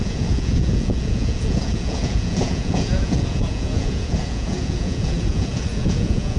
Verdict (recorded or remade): remade